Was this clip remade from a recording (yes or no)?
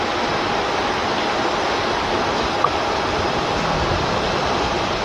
no